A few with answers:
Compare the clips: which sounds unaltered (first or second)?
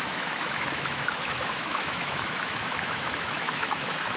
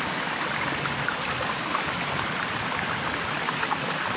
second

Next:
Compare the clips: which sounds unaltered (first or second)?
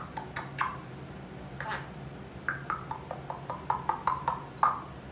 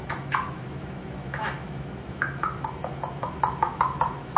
first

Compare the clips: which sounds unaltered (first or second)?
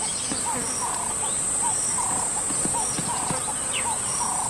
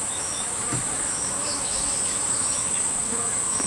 first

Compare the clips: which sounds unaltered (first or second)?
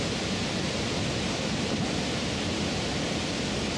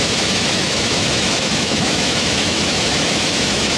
first